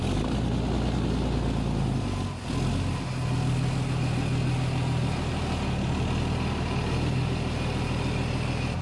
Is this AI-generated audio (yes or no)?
no